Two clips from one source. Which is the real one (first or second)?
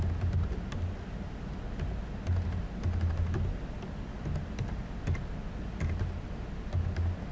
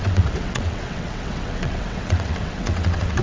first